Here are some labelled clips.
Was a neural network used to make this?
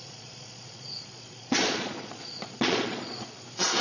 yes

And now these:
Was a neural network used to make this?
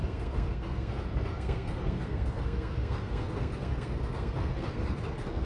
yes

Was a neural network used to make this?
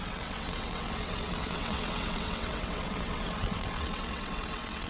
yes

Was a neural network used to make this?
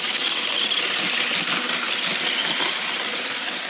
no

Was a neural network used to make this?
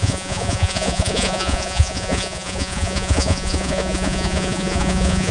yes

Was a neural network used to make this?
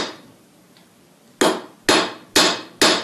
no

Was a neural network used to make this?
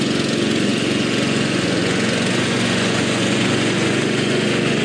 yes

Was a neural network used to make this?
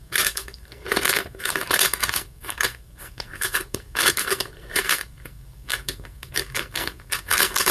yes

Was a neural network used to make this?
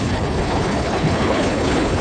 yes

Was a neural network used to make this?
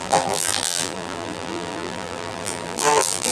yes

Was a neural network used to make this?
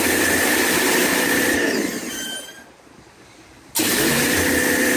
yes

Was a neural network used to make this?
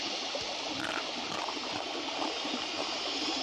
no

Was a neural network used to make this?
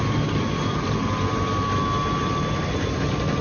no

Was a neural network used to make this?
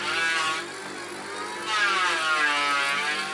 no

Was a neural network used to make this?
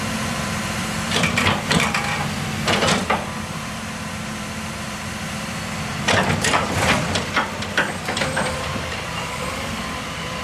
yes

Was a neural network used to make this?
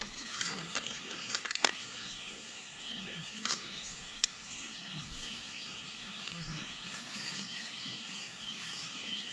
yes